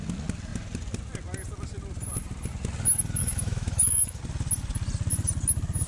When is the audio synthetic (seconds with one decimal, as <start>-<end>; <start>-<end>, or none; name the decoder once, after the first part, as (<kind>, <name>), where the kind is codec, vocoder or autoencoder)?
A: 3.2-4.2 (autoencoder, DAC-VAE)